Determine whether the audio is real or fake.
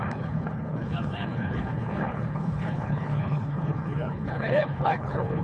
fake